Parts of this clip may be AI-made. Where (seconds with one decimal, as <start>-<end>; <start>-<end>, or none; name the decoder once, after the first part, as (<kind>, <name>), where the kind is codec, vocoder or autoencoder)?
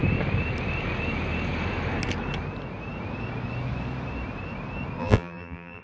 5.0-5.8 (vocoder, BigVGAN v2)